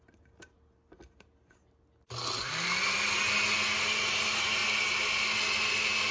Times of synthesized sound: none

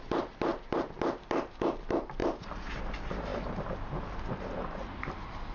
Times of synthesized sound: none